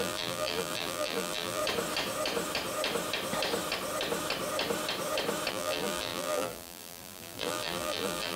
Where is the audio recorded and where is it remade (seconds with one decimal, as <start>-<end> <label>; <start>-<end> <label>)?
0.0-1.6 remade; 1.6-5.5 recorded; 5.5-8.4 remade